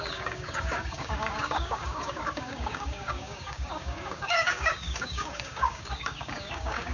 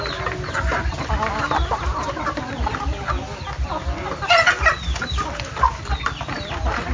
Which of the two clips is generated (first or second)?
first